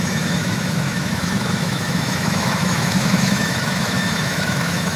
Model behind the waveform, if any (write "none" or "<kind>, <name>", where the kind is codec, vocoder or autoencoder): autoencoder, DAC-VAE